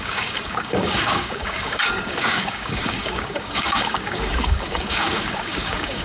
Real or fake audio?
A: fake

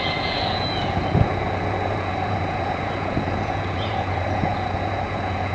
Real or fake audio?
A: fake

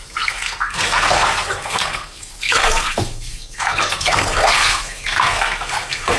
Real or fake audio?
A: fake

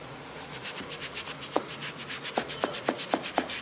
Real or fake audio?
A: fake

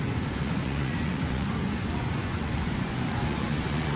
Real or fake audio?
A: fake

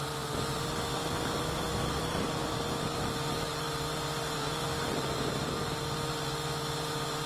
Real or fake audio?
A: real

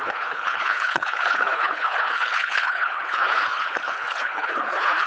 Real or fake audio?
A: fake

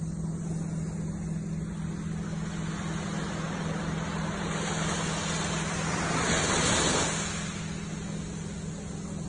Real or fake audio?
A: real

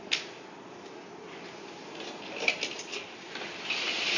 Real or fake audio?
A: real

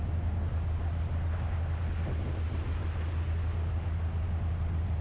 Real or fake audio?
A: real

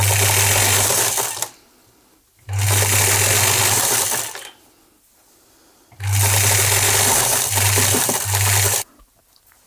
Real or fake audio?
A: real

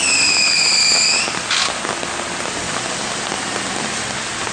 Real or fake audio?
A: real